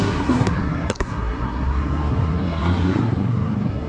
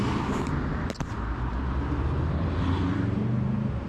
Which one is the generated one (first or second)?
first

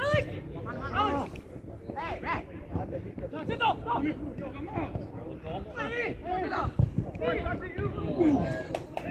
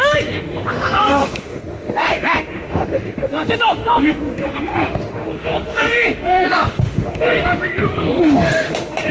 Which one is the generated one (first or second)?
second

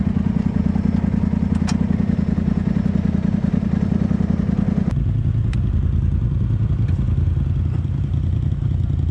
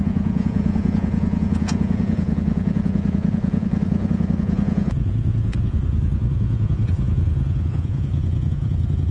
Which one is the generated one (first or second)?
second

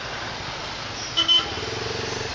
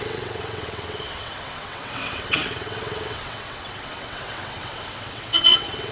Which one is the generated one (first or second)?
second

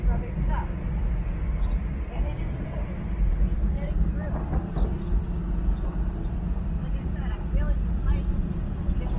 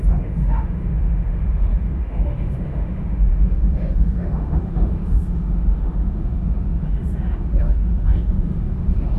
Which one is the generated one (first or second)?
second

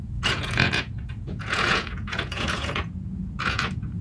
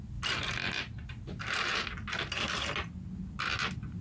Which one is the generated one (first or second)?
first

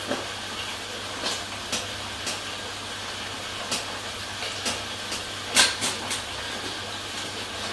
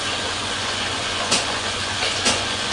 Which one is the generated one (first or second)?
second